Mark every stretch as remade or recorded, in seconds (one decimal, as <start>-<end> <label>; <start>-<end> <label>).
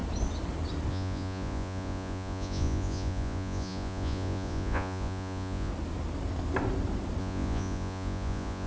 0.0-0.9 recorded; 0.9-5.7 remade; 5.7-7.2 recorded; 7.2-8.7 remade